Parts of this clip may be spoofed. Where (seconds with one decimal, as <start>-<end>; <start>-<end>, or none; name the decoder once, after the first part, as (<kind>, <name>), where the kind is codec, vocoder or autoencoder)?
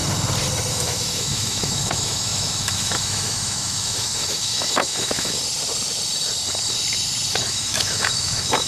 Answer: 0.7-5.4 (autoencoder, DAC-VAE); 7.3-8.7